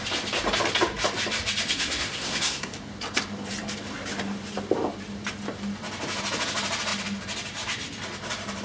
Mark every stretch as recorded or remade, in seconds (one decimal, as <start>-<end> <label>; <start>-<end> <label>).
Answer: 0.0-1.7 recorded; 1.7-2.7 remade; 2.7-8.6 recorded